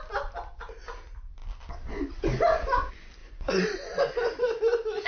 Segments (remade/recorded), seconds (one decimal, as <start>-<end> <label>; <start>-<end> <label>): 0.0-3.2 recorded; 3.2-5.1 remade